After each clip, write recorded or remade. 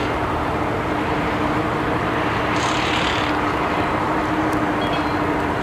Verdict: recorded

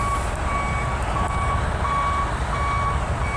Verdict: recorded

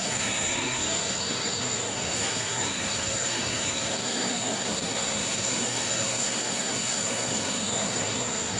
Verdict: remade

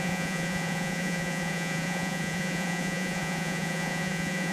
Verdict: remade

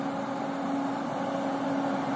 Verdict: recorded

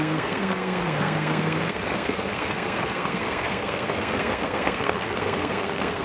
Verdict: remade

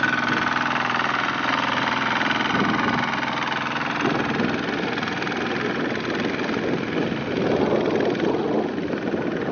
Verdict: recorded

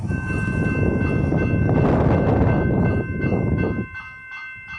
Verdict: recorded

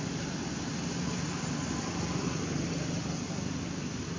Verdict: recorded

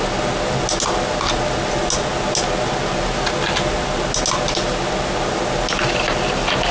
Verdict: recorded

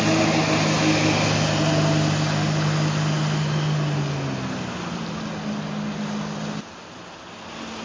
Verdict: recorded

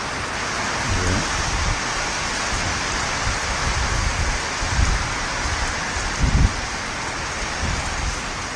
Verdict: recorded